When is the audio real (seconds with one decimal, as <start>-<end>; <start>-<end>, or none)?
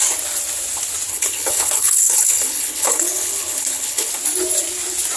0.0-1.1; 4.1-5.2